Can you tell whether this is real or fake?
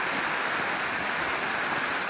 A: real